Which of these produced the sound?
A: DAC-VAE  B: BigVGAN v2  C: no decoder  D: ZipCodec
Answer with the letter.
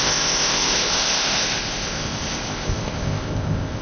D